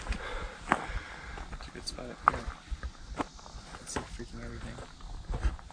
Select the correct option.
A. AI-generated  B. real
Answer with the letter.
B